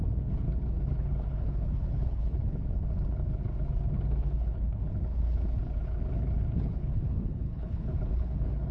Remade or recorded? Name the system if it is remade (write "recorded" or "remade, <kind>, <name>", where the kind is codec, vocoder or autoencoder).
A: remade, codec, HILCodec